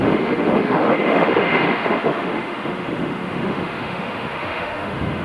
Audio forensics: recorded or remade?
remade